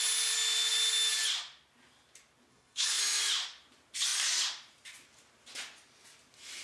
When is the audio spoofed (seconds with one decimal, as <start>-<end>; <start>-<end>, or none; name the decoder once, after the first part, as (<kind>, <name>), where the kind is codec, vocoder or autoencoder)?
2.5-3.0 (codec, SNAC)